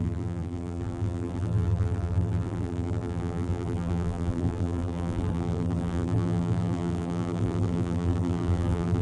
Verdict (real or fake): fake